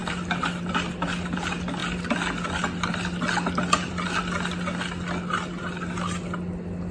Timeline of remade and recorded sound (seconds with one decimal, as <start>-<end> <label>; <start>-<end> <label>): 0.0-6.9 recorded